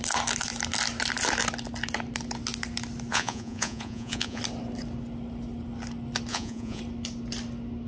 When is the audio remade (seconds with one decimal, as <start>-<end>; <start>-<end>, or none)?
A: 3.1-4.4; 6.3-6.8